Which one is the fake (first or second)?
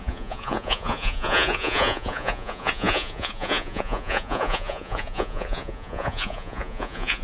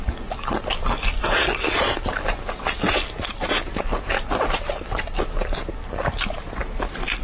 first